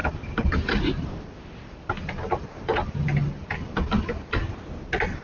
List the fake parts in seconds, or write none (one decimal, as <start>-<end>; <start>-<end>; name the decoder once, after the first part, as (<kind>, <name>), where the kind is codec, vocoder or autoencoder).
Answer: 0.0-4.4 (vocoder, BigVGAN v2)